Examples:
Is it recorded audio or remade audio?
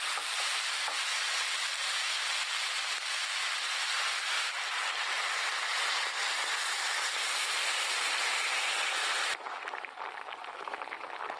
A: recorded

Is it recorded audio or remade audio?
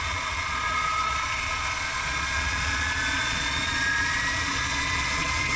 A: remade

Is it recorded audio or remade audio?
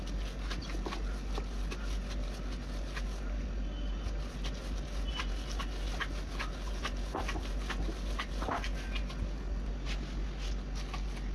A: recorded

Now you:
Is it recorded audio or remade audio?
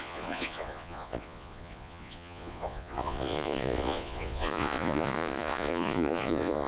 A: remade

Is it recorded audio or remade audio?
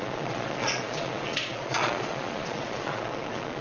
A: remade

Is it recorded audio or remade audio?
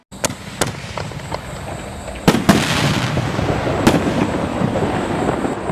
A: recorded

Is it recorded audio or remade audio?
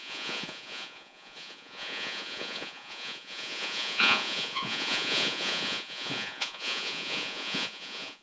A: remade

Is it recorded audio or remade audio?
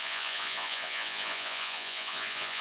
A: remade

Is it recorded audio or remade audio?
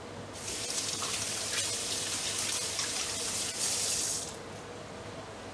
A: recorded